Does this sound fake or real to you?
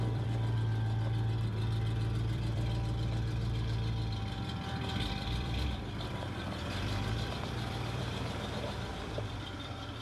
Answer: fake